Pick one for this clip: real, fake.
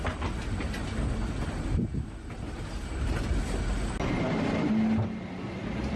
real